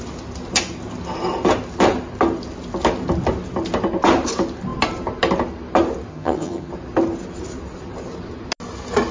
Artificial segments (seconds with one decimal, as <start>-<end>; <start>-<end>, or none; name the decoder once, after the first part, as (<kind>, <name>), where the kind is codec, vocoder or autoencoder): 6.1-6.7 (vocoder, HiFi-GAN)